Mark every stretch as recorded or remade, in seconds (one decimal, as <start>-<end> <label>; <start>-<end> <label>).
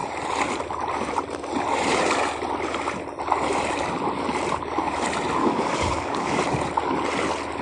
0.0-5.4 recorded; 5.4-6.4 remade; 6.4-7.6 recorded